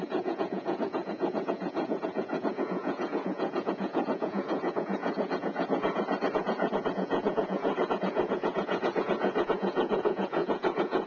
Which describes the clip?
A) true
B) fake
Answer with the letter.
B